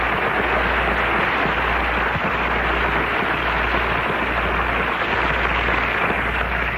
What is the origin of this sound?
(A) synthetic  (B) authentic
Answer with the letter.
B